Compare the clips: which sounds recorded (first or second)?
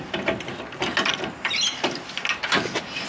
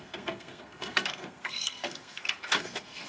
first